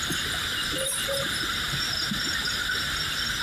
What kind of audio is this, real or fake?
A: real